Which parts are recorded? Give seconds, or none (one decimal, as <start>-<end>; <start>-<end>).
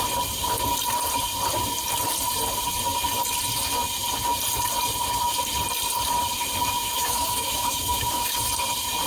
0.0-6.8; 8.4-9.1